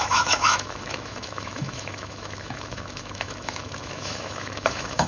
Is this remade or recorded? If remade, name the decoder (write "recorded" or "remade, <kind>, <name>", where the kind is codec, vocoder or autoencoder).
remade, autoencoder, DAC-VAE